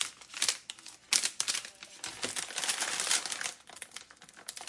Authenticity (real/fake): real